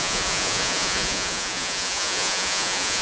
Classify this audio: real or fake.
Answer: fake